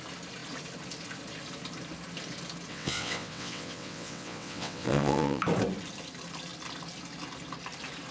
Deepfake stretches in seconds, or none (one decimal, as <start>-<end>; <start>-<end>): 2.7-5.4